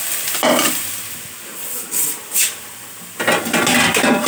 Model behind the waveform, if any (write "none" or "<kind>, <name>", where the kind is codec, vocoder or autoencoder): none